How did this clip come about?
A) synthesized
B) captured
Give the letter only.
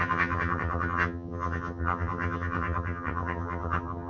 A